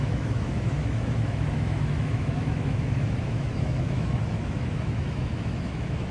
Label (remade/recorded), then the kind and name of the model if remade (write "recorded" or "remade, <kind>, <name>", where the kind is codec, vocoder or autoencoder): remade, autoencoder, DAC-VAE